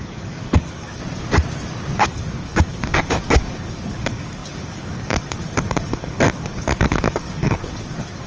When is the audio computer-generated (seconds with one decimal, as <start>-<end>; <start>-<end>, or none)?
0.0-1.0; 2.0-8.3